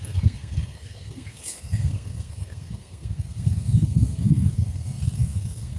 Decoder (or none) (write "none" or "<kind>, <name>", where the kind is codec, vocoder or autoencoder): codec, SNAC